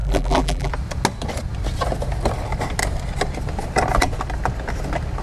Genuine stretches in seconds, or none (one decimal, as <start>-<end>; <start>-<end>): 0.7-5.2